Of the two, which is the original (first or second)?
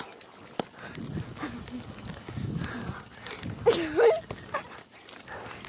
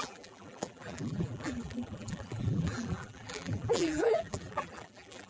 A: first